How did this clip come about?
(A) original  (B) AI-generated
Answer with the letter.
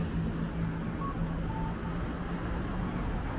A